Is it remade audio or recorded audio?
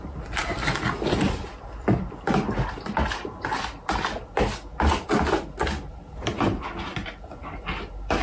recorded